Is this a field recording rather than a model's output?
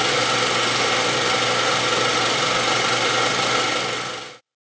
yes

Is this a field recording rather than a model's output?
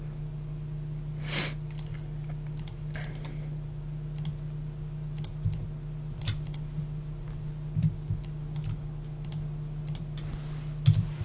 yes